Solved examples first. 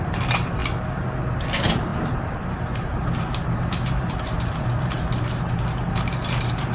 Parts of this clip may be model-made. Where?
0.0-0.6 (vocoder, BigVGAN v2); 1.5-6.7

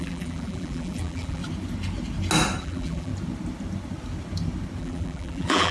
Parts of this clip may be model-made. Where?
0.0-1.4 (vocoder, BigVGAN v2); 2.6-3.1; 4.8-5.7

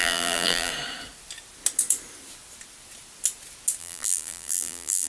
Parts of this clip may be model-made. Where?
0.0-0.7 (vocoder, BigVGAN v2); 3.8-5.1

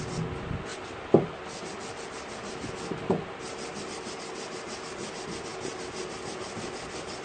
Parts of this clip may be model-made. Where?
none

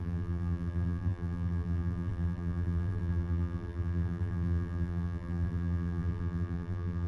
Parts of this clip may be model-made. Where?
0.0-7.1 (vocoder, BigVGAN v2)

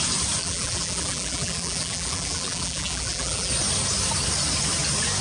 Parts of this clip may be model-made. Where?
0.4-3.5 (vocoder, BigVGAN v2)